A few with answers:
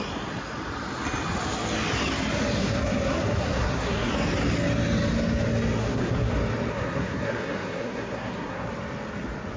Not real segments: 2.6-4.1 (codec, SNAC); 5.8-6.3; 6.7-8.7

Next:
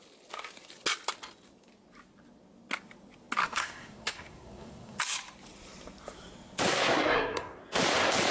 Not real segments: 3.4-5.0 (codec, SNAC); 6.7-7.6

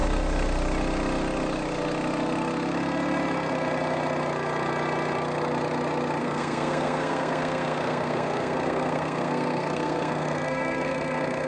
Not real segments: 6.2-11.5 (codec, SNAC)

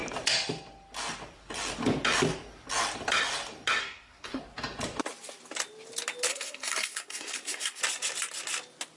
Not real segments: 3.8-4.4 (codec, SNAC); 6.3-7.8

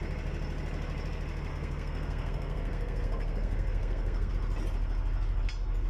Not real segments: 1.5-4.3 (codec, SNAC)

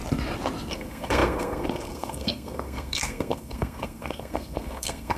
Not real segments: 0.7-5.2 (codec, SNAC)

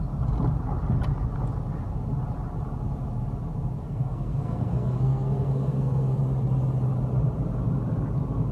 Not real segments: 3.8-6.2 (codec, SNAC)

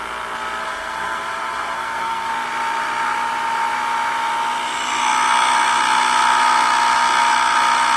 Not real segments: 0.6-2.3 (codec, SNAC)